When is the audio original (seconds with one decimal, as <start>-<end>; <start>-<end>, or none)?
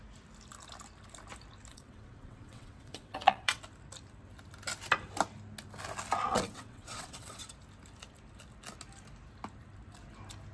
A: 0.0-1.7; 3.6-6.3; 7.4-10.5